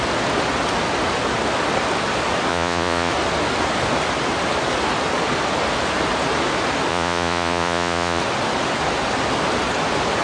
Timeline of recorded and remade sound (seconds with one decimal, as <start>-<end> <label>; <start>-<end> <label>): 0.0-2.5 recorded; 2.5-3.1 remade; 3.1-6.9 recorded; 6.9-8.2 remade; 8.2-10.2 recorded